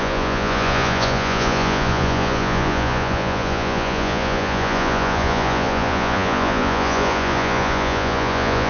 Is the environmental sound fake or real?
fake